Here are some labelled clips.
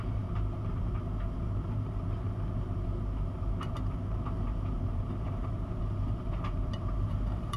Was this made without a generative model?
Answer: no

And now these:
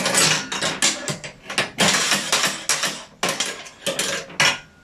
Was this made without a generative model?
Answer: yes